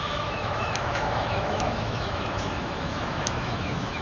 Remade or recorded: remade